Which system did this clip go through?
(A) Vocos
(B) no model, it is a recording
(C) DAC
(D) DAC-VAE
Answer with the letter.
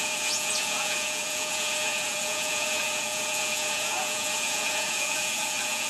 A